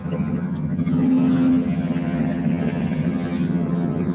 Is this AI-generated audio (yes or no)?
yes